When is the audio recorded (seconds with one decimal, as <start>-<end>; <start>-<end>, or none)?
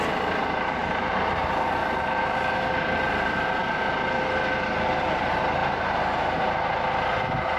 0.0-0.8; 1.3-5.6; 6.7-7.6